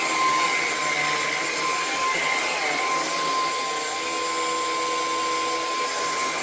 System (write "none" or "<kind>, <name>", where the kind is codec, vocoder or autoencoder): none